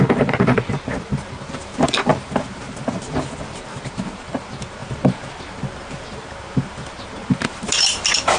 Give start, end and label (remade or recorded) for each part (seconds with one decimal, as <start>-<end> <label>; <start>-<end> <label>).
0.0-8.4 remade